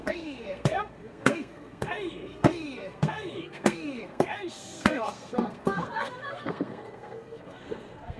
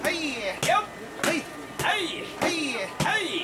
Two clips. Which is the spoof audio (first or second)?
first